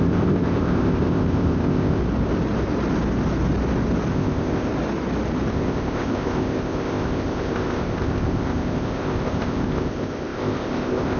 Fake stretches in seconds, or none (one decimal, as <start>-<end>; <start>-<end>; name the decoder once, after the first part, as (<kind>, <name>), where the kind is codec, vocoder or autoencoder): 0.0-2.0 (codec, ZipCodec); 4.1-4.7; 5.5-11.2